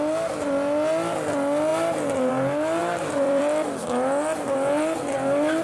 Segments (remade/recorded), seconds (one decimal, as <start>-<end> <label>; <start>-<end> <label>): 0.0-2.8 recorded; 2.8-3.4 remade; 3.4-5.6 recorded